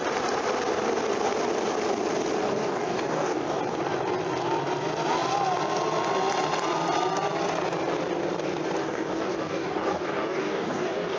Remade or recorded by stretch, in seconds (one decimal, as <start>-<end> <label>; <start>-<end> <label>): 0.0-2.4 recorded; 2.4-3.6 remade; 3.6-8.8 recorded; 8.8-11.2 remade